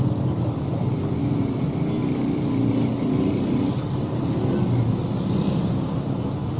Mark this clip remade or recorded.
recorded